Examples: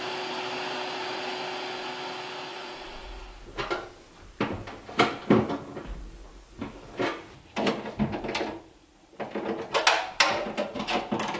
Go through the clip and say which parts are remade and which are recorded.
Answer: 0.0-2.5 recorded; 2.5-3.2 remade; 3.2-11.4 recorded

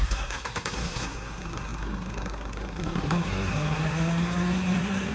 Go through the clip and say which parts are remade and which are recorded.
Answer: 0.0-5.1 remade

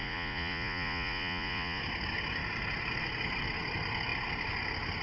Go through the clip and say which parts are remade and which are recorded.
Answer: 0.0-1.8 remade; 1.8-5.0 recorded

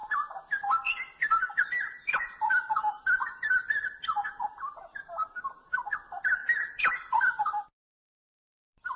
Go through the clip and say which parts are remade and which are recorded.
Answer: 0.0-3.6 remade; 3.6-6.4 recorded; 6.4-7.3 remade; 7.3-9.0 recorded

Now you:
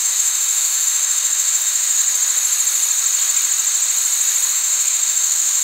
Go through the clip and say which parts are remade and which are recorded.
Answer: 0.0-2.0 remade; 2.0-4.5 recorded; 4.5-5.6 remade